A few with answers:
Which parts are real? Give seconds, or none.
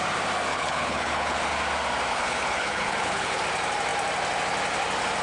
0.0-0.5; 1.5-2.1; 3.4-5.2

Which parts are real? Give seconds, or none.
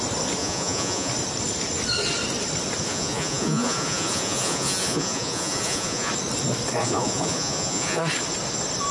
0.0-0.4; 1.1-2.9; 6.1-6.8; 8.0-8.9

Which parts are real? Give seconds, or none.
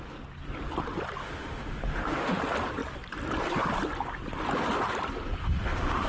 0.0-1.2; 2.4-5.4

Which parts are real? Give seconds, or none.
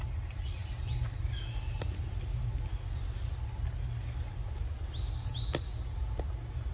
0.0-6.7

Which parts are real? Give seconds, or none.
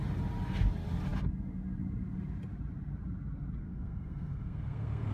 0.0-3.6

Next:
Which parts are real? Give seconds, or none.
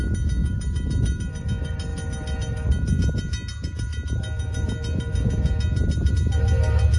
0.0-7.0